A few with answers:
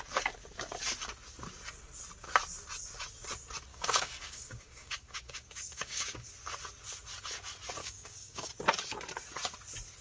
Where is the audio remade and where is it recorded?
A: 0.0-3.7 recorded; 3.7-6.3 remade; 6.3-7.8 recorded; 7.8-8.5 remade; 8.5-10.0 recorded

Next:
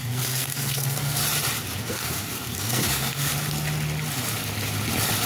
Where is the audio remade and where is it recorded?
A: 0.0-1.2 remade; 1.2-1.8 recorded; 1.8-3.3 remade; 3.3-5.3 recorded

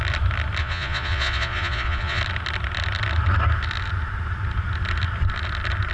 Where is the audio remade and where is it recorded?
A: 0.0-0.6 recorded; 0.6-2.2 remade; 2.2-5.9 recorded

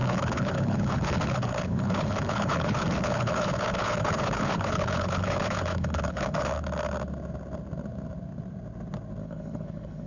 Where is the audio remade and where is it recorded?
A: 0.0-6.5 remade; 6.5-9.2 recorded; 9.2-10.1 remade

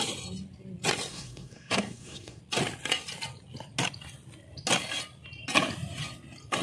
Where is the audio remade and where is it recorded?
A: 0.0-1.1 recorded; 1.1-2.4 remade; 2.4-6.6 recorded